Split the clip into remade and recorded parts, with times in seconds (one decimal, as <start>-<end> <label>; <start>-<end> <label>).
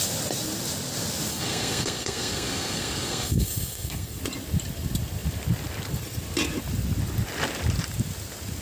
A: 0.0-1.3 recorded; 1.3-4.2 remade; 4.2-8.6 recorded